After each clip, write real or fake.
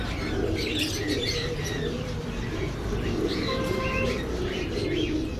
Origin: real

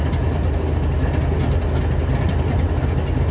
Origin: real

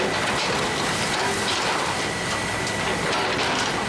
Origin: real